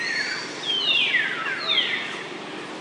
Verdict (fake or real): real